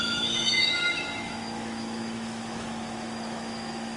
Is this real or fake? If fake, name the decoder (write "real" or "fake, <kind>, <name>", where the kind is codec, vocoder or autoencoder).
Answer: fake, autoencoder, DAC-VAE